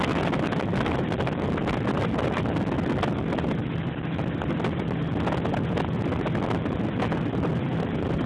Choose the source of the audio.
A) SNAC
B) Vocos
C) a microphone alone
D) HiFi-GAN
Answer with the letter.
C